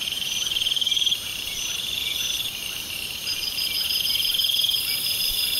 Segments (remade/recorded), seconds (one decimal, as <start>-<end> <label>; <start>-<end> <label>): 0.0-5.6 remade